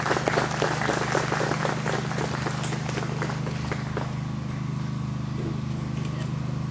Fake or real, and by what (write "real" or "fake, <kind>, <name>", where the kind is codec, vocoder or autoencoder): real